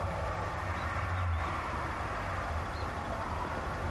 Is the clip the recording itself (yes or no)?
no